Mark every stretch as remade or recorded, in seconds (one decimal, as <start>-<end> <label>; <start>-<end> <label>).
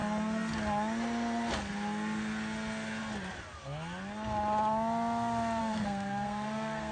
0.0-5.6 recorded; 5.6-6.9 remade